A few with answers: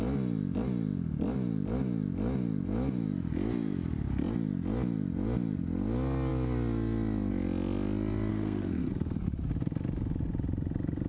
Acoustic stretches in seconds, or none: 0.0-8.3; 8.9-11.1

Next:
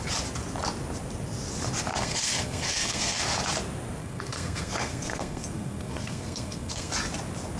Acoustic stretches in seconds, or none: 0.0-1.9; 3.2-4.0; 6.9-7.6

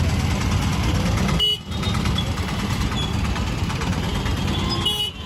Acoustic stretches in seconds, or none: 0.0-5.3

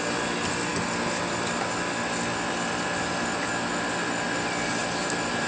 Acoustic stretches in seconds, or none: 0.0-5.5

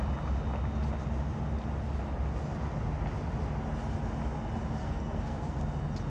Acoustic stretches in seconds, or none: 0.0-4.8; 5.6-6.1

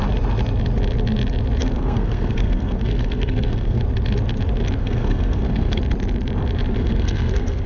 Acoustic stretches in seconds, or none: 0.0-1.6; 3.8-4.8; 5.8-6.8

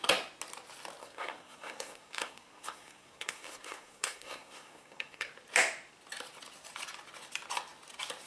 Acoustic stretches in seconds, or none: 0.0-1.0; 5.3-8.3

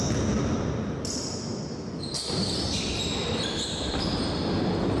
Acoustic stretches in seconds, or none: 0.0-5.0